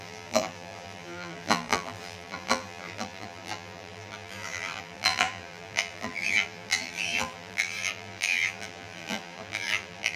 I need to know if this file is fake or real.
fake